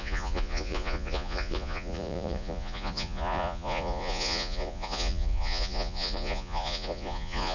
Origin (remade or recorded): remade